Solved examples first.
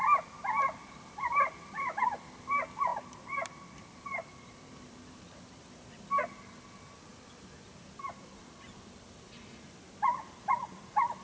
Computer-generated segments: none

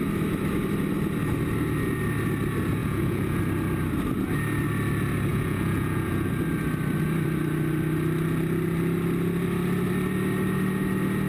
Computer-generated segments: 2.8-3.4 (vocoder, Vocos); 5.3-6.3

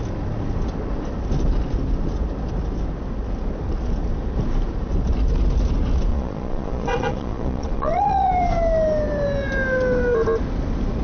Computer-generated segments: 6.1-8.3 (vocoder, Vocos)

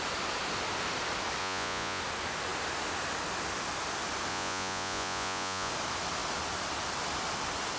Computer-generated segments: 1.4-2.0 (vocoder, Vocos); 4.3-5.7

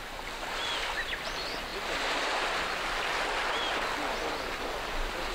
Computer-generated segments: none

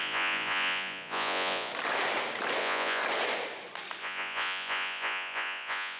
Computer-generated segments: 0.0-1.7 (vocoder, Vocos); 2.6-3.0; 4.0-6.0